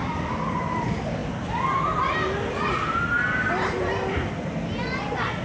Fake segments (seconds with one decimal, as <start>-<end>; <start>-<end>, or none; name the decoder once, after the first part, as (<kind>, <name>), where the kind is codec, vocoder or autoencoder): none